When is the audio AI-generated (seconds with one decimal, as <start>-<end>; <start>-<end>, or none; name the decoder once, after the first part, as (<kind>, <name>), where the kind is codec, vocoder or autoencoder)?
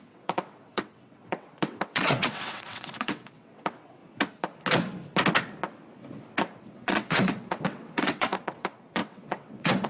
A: 0.0-4.0 (vocoder, WaveNeXt); 6.6-9.9